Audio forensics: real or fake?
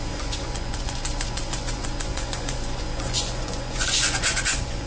fake